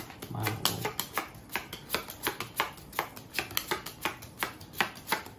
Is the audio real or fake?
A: real